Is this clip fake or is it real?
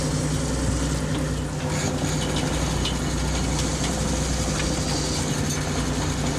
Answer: real